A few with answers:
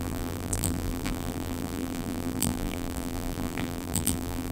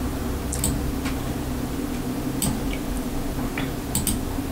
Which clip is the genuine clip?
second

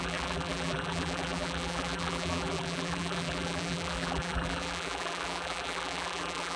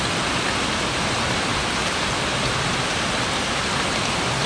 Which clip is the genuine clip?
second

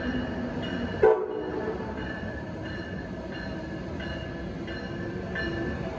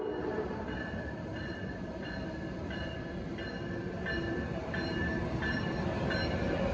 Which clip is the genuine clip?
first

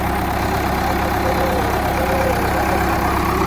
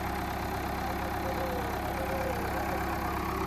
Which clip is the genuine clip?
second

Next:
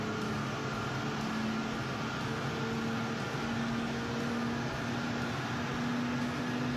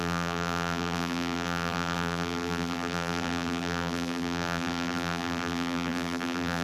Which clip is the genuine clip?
first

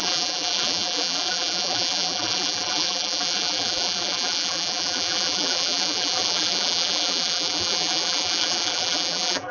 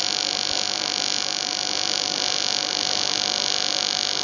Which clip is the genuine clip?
second